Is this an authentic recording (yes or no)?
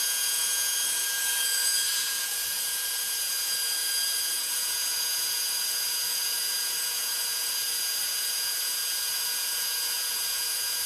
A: no